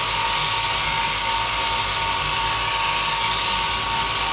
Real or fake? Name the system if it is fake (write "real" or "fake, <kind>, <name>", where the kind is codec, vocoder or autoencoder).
real